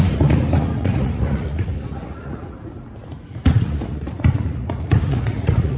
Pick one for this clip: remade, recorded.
remade